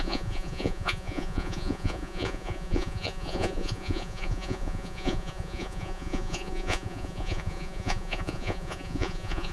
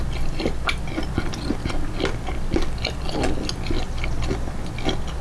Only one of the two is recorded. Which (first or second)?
second